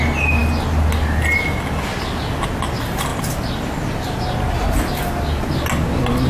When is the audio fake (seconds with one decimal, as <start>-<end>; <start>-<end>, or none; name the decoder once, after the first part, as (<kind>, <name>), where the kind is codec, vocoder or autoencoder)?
none